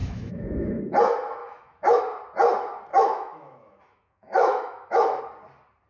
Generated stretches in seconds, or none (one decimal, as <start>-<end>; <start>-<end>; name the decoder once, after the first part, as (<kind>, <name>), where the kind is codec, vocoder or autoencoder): 0.0-0.8 (autoencoder, DAC-VAE); 1.4-2.0; 2.9-5.2